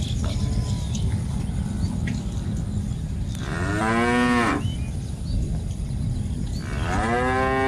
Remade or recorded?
recorded